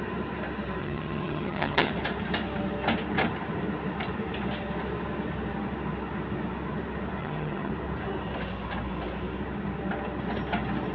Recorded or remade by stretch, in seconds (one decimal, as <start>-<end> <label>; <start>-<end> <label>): 0.0-0.8 recorded; 0.8-1.9 remade; 1.9-7.2 recorded; 7.2-7.7 remade; 7.7-10.9 recorded